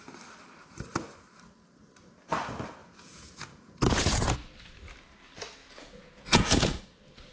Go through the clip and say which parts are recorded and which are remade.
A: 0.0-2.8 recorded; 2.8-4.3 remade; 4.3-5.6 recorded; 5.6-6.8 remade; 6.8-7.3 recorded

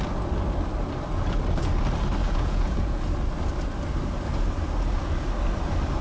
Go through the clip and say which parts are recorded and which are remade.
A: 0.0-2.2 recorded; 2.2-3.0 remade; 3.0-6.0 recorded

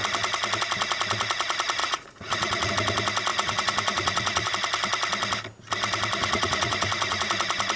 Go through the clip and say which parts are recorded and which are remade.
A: 0.0-1.8 recorded; 1.8-2.7 remade; 2.7-3.3 recorded; 3.3-4.5 remade; 4.5-6.2 recorded; 6.2-7.3 remade; 7.3-7.8 recorded

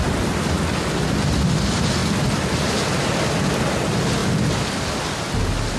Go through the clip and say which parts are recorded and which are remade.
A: 0.0-5.8 recorded